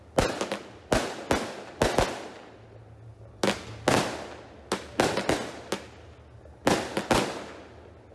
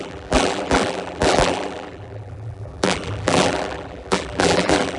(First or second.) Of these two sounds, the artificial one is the second